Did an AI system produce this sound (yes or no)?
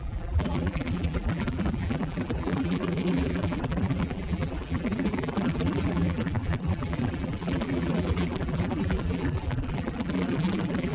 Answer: yes